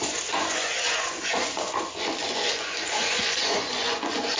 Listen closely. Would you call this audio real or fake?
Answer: fake